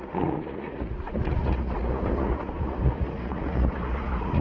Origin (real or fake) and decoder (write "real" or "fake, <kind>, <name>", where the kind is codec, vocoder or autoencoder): fake, vocoder, Vocos